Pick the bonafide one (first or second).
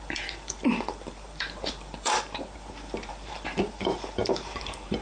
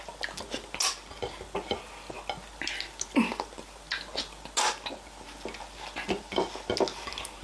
second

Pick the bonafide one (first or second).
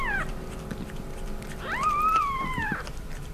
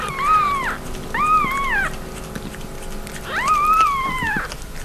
second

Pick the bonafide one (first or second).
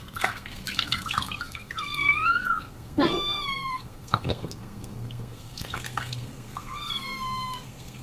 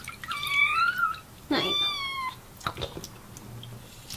second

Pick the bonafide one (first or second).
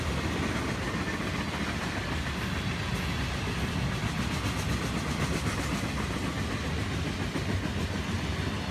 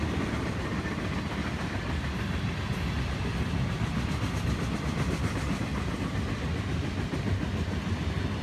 first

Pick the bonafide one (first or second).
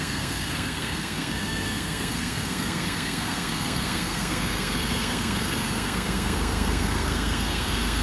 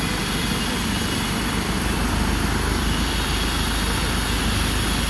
second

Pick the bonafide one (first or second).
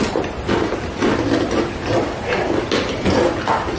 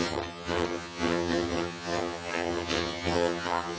first